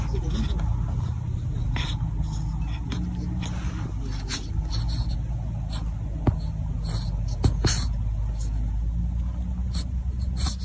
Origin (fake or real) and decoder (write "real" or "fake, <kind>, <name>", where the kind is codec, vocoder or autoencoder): real